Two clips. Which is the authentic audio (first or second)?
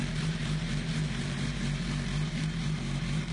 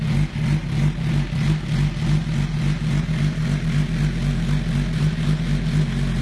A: second